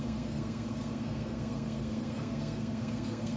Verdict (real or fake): fake